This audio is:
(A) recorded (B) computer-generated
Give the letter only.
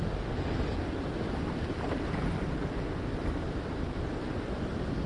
A